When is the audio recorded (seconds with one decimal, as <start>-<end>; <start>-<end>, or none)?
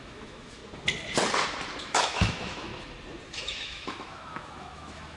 0.6-1.8; 2.7-3.3